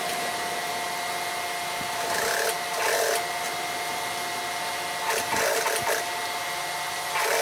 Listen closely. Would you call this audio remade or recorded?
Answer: recorded